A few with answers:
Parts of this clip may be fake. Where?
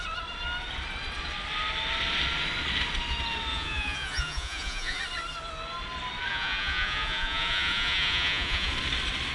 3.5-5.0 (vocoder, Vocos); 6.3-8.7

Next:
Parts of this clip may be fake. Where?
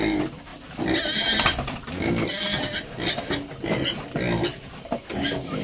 none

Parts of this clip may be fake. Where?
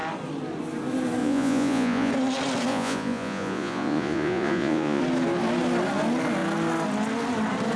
1.2-2.1 (vocoder, Vocos); 2.7-5.0